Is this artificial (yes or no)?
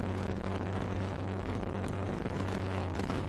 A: yes